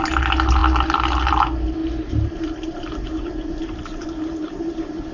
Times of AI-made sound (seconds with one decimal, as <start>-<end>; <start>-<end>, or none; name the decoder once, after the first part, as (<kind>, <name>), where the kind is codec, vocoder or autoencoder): 1.8-5.1 (vocoder, BigVGAN v2)